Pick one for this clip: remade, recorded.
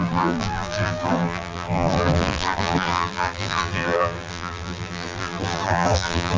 remade